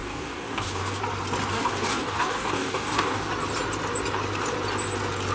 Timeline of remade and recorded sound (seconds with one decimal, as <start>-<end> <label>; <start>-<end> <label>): 0.0-1.0 remade; 1.0-1.5 recorded; 1.5-3.3 remade; 3.3-5.3 recorded